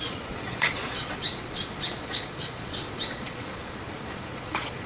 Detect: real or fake fake